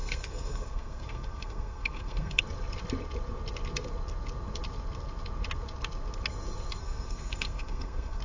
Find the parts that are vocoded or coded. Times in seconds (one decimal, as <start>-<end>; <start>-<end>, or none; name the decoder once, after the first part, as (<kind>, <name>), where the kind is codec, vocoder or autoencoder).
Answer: 0.0-2.4 (codec, SNAC); 6.8-8.2